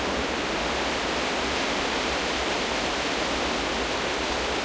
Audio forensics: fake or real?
real